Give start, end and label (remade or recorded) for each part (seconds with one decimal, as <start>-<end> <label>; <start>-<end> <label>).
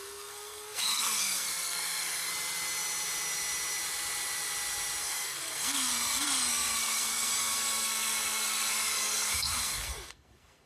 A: 0.0-2.3 remade; 2.3-5.0 recorded; 5.0-10.7 remade